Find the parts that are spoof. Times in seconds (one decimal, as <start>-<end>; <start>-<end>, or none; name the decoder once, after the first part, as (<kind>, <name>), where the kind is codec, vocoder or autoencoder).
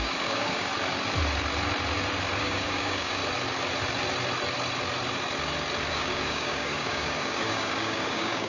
0.0-0.7 (codec, DAC); 2.4-3.2; 5.9-8.5